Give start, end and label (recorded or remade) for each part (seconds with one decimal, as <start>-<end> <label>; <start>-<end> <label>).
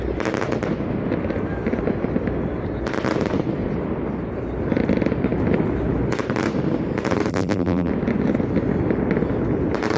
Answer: 0.0-7.3 recorded; 7.3-7.9 remade; 7.9-10.0 recorded